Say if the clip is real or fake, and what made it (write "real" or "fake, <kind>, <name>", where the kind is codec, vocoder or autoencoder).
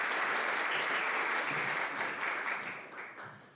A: real